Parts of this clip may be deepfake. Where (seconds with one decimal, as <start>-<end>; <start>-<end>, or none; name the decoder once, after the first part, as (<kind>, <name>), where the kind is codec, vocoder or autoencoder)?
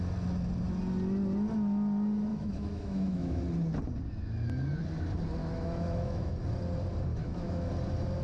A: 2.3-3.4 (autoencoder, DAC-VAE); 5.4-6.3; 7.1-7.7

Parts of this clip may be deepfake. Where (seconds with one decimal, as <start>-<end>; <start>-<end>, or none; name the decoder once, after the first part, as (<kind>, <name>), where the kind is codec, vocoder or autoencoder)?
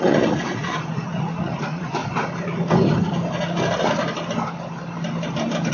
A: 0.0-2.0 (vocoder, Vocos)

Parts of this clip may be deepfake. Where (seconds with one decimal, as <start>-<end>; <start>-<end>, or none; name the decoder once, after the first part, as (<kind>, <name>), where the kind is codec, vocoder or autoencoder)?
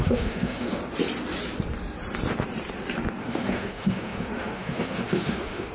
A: 0.0-0.8 (autoencoder, DAC-VAE); 3.2-5.7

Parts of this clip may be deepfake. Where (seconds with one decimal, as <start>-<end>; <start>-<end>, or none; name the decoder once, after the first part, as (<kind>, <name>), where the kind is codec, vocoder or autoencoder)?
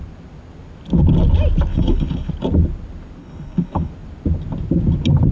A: 1.7-2.3 (codec, HILCodec); 3.2-3.9